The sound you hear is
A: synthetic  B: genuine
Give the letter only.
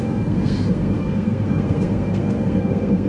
A